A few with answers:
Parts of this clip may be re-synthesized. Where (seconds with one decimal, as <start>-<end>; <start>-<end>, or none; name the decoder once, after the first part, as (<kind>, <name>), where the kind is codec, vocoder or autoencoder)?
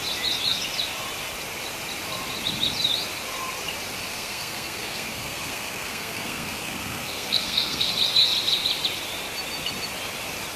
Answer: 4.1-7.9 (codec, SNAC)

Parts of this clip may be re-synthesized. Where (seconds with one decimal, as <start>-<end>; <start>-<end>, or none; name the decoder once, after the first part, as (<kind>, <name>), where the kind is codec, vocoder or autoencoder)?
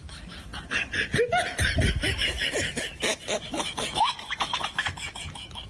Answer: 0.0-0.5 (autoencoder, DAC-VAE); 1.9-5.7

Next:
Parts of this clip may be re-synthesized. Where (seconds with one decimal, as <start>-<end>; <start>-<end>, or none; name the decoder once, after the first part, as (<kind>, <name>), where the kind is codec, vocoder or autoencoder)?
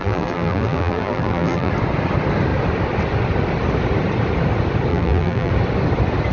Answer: 0.0-1.7 (vocoder, BigVGAN v2); 4.9-5.5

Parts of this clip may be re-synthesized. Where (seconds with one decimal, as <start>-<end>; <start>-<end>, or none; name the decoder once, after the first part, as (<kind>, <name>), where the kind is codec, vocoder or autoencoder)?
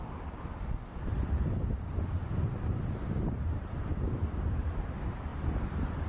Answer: 3.1-3.9 (vocoder, BigVGAN v2); 4.6-6.1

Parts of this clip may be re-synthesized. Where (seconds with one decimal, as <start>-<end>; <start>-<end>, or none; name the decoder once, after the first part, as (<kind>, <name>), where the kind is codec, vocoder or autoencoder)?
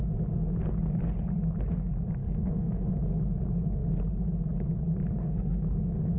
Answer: 2.2-2.9 (codec, SNAC); 5.2-5.8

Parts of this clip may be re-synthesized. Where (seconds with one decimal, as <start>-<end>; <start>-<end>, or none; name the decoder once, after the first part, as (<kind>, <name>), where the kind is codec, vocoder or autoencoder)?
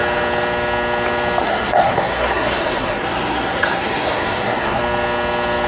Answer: 1.4-4.8 (codec, SNAC)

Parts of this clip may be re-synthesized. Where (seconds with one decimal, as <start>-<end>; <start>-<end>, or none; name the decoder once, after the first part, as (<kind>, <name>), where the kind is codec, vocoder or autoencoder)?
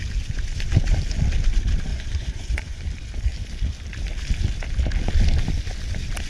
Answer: 1.9-2.8 (vocoder, Vocos)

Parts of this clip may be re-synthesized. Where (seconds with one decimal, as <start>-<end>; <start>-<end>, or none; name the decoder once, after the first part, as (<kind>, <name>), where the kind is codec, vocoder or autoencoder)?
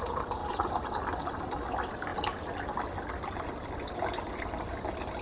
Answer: 2.1-5.2 (vocoder, BigVGAN v2)